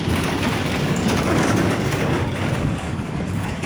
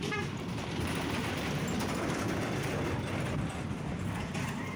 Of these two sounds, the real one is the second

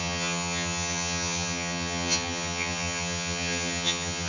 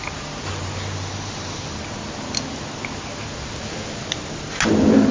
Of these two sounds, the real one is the second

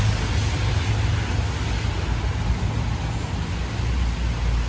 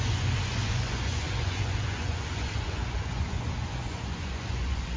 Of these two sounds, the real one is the first